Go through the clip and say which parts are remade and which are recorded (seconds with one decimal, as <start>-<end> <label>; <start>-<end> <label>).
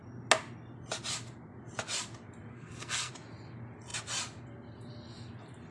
0.0-2.5 recorded; 2.5-3.1 remade; 3.1-5.7 recorded